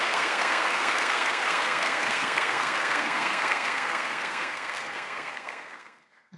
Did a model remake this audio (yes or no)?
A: yes